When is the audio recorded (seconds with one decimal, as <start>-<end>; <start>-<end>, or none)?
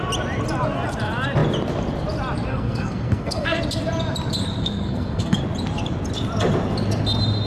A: 0.0-2.5; 3.6-4.6; 5.4-7.5